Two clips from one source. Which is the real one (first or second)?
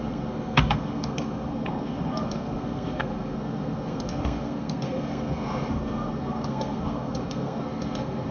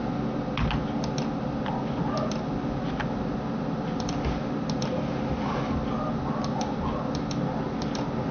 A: second